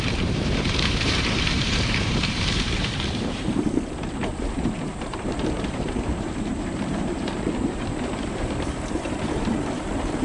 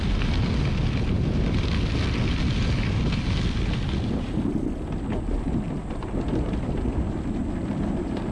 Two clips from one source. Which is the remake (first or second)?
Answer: first